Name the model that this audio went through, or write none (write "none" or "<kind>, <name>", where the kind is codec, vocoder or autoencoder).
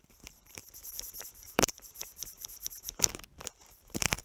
vocoder, BigVGAN v2